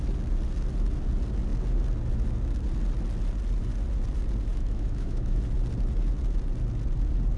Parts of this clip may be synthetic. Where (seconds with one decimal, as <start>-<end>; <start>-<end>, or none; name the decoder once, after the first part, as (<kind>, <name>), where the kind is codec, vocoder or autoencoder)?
4.5-5.4 (autoencoder, DAC-VAE)